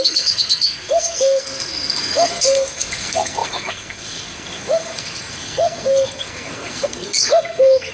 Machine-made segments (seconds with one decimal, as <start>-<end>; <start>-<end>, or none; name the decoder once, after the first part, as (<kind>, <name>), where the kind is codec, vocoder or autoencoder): 0.0-7.9 (codec, SNAC)